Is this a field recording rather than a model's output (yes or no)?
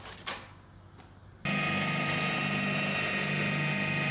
yes